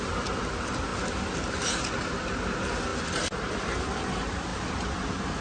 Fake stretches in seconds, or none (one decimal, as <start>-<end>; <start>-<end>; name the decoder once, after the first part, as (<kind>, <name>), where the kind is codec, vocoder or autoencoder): 0.0-0.9 (vocoder, BigVGAN v2); 2.4-2.9; 3.5-5.4